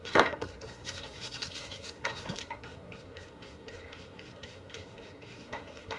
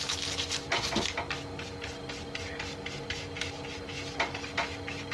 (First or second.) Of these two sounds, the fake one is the first